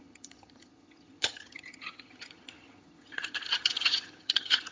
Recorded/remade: remade